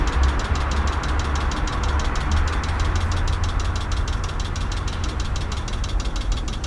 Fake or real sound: real